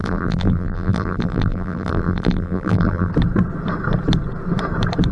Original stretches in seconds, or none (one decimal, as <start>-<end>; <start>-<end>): 3.1-5.1